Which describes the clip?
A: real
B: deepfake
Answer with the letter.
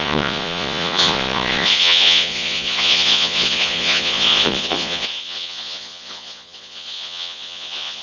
B